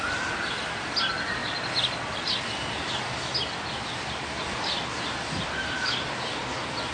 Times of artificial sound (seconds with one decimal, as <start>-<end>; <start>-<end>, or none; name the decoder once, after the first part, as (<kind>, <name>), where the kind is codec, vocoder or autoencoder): none